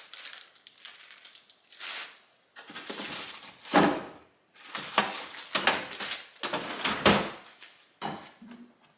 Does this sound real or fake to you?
real